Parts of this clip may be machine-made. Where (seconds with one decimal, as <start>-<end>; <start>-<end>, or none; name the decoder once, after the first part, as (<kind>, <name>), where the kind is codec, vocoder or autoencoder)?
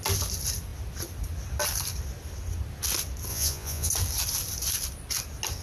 3.3-3.9 (vocoder, Vocos)